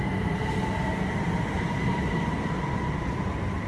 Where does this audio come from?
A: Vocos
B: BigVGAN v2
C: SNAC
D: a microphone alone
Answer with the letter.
D